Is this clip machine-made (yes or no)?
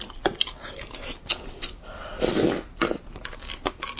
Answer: no